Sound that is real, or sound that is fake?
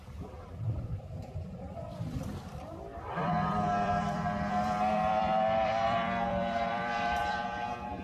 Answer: fake